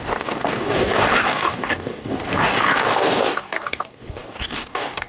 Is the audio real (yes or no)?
no